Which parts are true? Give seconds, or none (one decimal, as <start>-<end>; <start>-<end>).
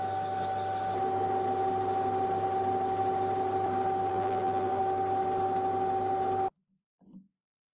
0.0-4.1; 4.8-7.7